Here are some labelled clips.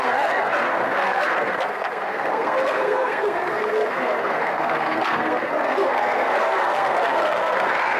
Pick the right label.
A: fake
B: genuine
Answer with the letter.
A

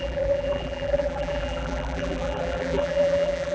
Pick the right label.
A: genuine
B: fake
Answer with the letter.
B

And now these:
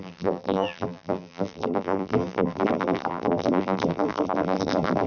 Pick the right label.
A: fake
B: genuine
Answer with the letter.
A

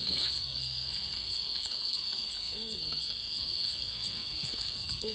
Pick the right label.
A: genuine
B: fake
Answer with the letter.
B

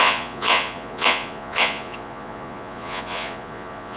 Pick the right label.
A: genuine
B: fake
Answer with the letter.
B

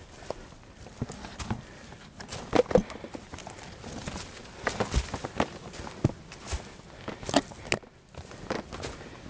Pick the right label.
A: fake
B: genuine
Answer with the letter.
B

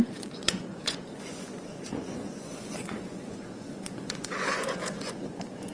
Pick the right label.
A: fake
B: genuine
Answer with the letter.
A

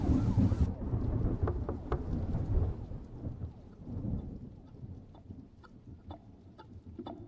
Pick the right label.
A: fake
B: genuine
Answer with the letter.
B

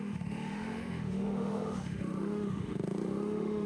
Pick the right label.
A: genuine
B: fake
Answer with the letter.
B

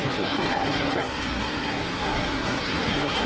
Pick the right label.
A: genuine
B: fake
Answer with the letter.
B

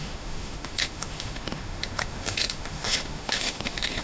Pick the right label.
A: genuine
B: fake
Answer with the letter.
B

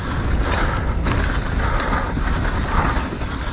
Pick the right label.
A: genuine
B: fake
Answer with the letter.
A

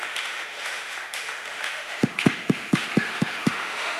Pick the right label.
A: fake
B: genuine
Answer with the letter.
A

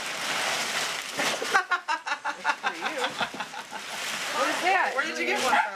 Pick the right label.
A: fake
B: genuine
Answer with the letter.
B